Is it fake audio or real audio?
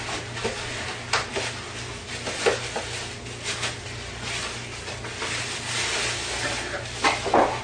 real